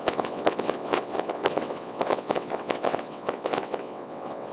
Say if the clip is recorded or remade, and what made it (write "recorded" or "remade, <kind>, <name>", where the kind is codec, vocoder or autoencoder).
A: remade, vocoder, WaveNeXt